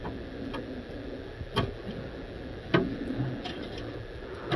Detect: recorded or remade recorded